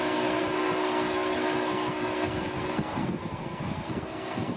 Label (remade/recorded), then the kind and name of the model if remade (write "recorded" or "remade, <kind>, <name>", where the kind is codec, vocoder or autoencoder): remade, codec, SNAC